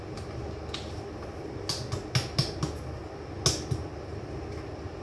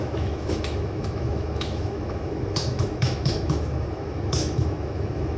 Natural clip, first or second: first